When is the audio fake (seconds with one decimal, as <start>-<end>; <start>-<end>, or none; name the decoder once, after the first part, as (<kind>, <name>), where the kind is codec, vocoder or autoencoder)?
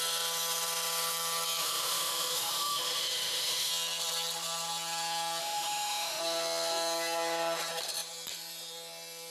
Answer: 1.6-3.7 (autoencoder, DAC-VAE); 5.4-6.2